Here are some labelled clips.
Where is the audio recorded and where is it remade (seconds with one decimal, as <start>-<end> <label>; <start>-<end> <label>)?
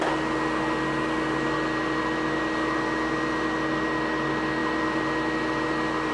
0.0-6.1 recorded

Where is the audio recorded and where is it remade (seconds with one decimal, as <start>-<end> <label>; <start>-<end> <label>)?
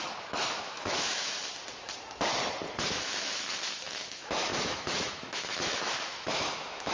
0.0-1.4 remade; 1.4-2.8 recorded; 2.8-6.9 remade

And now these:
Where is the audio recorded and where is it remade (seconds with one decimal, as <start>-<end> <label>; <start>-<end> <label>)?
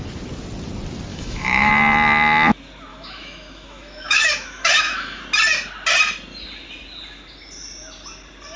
0.0-1.1 recorded; 1.1-1.7 remade; 1.7-2.9 recorded; 2.9-5.2 remade; 5.2-8.6 recorded